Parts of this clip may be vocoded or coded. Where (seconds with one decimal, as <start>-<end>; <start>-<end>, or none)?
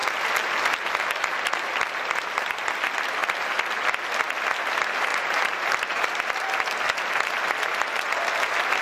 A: 5.1-6.3